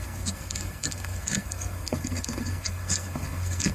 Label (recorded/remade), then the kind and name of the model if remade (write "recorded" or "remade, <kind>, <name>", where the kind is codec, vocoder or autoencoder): remade, codec, SNAC